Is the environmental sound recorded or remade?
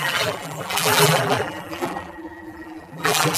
remade